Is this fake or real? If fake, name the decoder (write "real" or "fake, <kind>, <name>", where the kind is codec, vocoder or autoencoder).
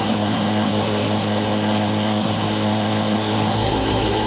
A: fake, codec, SNAC